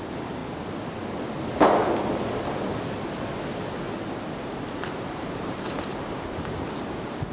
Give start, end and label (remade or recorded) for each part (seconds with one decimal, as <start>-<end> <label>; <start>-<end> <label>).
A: 0.0-0.4 remade; 0.4-4.8 recorded; 4.8-7.3 remade